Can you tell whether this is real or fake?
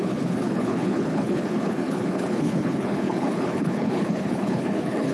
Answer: fake